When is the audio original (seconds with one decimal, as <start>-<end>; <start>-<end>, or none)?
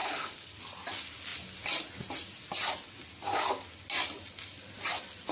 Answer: 0.6-5.3